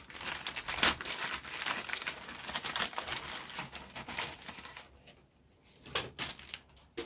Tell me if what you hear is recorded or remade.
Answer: recorded